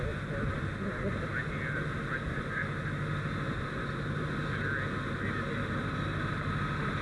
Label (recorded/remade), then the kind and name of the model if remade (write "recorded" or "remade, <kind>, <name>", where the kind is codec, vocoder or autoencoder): recorded